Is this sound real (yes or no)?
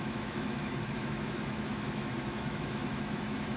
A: no